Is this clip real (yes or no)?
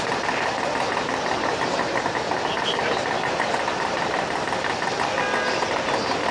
yes